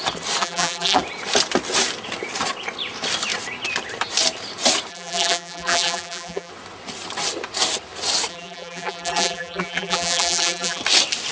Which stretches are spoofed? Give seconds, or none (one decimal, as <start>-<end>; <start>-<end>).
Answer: 0.4-1.0; 4.9-6.5; 8.3-10.8